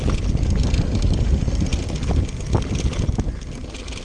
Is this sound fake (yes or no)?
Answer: no